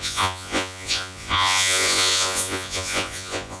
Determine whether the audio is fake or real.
fake